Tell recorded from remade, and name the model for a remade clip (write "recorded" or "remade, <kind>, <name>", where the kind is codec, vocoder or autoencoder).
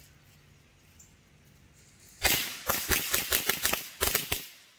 recorded